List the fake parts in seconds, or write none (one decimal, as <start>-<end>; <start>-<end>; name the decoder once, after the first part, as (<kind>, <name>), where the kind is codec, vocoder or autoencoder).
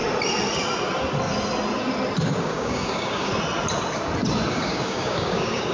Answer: 2.4-3.3 (codec, DAC); 4.5-5.7